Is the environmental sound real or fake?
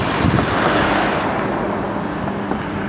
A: real